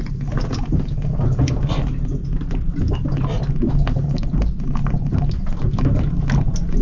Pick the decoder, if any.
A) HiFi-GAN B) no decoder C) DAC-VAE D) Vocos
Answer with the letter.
B